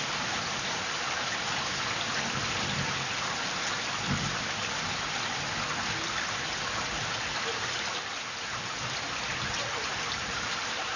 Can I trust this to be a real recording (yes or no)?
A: yes